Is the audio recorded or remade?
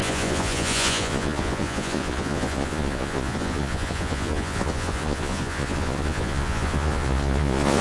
remade